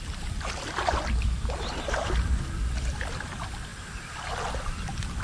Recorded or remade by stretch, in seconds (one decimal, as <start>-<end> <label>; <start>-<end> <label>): 0.0-5.2 recorded